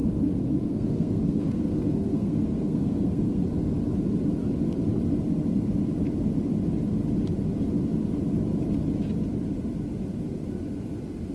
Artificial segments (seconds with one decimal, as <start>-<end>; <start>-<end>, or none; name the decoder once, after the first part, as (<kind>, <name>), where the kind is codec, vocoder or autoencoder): 0.0-3.4 (codec, SNAC)

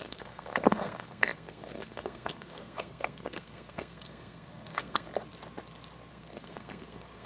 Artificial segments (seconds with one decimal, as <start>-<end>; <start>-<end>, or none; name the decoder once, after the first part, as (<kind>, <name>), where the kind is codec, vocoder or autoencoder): 0.0-5.1 (codec, SNAC); 6.1-7.3

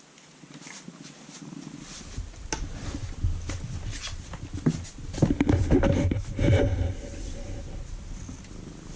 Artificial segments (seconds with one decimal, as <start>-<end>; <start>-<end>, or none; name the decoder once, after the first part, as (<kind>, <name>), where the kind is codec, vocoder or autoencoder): none

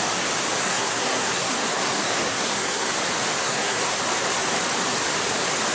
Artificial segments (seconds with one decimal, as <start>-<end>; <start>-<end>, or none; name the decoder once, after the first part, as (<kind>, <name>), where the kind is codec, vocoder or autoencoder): 0.6-2.9 (codec, SNAC); 3.4-4.0

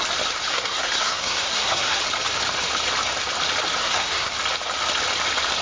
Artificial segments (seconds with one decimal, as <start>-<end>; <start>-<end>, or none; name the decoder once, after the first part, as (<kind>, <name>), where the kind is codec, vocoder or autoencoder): 0.5-2.0 (codec, SNAC); 3.8-4.3

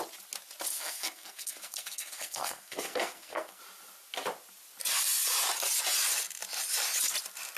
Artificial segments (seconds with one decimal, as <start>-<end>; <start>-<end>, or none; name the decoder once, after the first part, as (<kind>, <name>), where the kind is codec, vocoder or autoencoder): 0.7-3.6 (codec, SNAC)